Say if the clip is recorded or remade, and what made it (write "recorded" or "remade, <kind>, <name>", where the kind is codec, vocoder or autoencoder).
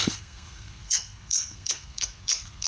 remade, codec, SNAC